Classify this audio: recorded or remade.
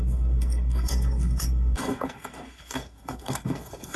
remade